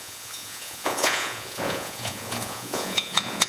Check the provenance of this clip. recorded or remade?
remade